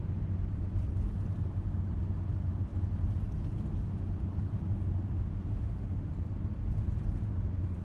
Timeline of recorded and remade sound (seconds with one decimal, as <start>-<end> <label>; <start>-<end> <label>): 0.0-5.3 recorded; 5.3-6.1 remade; 6.1-7.8 recorded